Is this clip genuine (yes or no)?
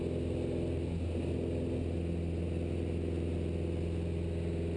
yes